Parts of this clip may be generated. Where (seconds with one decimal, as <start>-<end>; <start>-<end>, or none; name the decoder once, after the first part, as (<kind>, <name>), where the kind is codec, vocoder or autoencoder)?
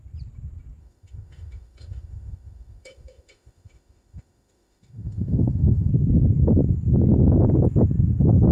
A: 0.8-5.9 (autoencoder, DAC-VAE)